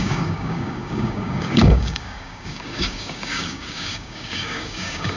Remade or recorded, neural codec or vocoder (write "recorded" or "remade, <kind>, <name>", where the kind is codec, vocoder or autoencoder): remade, codec, DAC